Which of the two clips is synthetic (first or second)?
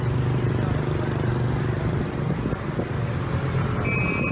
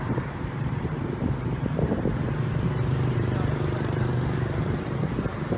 second